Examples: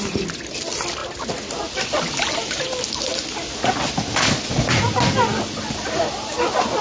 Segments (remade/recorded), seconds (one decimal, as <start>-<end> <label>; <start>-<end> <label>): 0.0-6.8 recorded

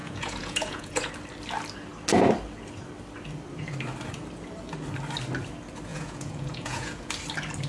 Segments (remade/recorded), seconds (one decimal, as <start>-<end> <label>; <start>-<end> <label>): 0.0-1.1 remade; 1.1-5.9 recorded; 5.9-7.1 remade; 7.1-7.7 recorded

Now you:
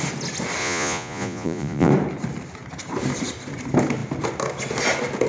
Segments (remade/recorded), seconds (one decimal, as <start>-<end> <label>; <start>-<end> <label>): 0.0-0.6 recorded; 0.6-1.9 remade; 1.9-5.3 recorded

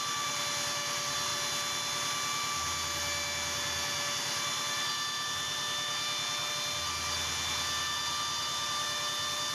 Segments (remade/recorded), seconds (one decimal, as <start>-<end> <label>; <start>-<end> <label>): 0.0-9.5 recorded

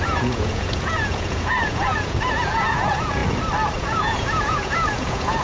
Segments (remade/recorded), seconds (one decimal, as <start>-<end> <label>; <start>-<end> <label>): 0.0-3.2 remade; 3.2-3.8 recorded; 3.8-5.4 remade

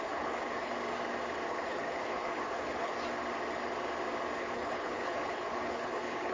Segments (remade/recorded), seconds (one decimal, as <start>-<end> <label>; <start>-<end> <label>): 0.0-0.7 remade; 0.7-1.5 recorded; 1.5-2.9 remade; 2.9-4.4 recorded; 4.4-6.3 remade

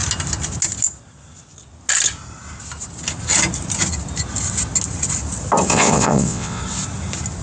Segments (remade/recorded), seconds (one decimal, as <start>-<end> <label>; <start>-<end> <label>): 0.0-5.7 recorded; 5.7-6.6 remade; 6.6-7.4 recorded

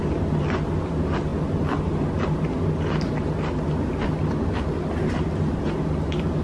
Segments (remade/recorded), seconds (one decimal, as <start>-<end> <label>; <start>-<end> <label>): 0.0-6.4 recorded